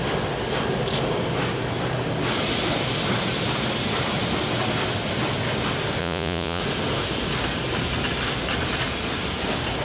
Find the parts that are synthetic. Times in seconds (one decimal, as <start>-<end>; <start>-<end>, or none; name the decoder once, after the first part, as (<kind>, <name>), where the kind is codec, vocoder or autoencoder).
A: 6.0-6.6 (vocoder, Vocos)